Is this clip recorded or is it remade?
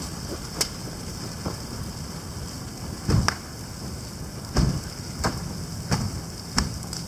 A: recorded